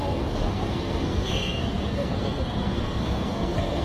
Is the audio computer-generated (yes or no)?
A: yes